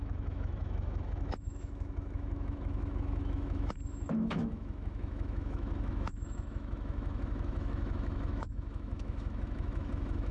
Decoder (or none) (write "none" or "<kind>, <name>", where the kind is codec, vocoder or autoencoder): autoencoder, DAC-VAE